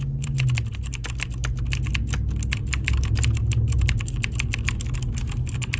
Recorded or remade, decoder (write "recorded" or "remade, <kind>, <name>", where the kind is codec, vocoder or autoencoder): recorded